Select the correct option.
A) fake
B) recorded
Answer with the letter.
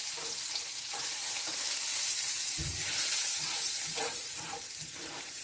A